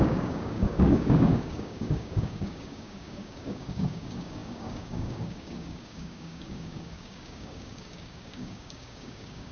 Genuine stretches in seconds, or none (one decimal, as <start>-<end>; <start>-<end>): none